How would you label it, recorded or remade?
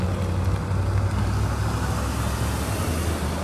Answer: recorded